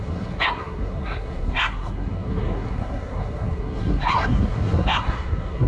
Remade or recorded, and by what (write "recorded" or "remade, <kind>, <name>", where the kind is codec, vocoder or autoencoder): remade, codec, SNAC